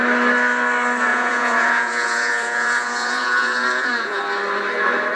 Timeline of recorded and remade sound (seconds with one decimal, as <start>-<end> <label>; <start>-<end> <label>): 0.0-1.1 recorded; 1.1-4.2 remade; 4.2-5.2 recorded